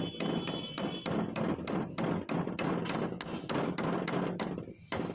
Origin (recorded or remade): recorded